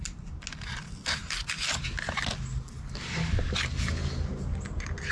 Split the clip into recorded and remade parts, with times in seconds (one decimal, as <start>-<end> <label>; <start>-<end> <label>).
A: 0.0-5.1 recorded